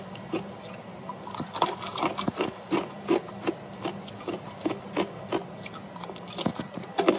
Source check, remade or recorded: recorded